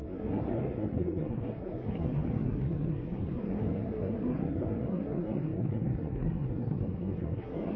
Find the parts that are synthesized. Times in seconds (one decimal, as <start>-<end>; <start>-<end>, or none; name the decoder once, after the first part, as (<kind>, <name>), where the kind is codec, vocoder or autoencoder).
0.0-7.8 (codec, SNAC)